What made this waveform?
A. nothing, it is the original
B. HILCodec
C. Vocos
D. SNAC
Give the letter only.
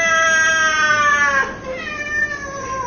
A